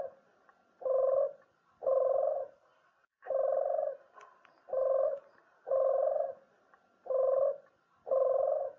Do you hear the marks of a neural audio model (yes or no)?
no